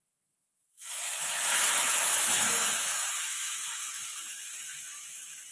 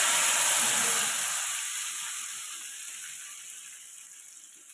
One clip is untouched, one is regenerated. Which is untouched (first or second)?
second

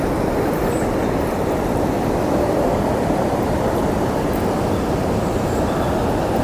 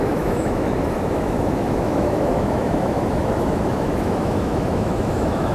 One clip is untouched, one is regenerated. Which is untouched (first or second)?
first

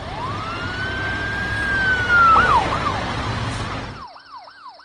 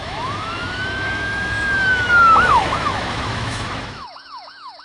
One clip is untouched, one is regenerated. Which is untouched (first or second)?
first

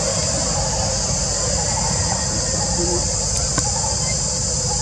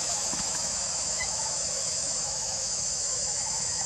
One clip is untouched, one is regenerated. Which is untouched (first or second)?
first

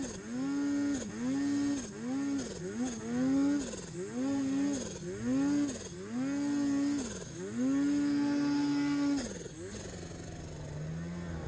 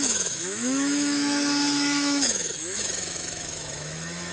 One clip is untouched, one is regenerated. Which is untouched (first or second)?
first